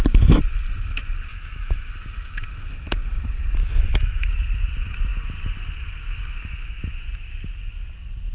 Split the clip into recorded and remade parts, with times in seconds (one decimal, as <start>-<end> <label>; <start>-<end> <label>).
0.0-1.3 recorded; 1.3-1.9 remade; 1.9-3.6 recorded; 3.6-4.3 remade; 4.3-8.3 recorded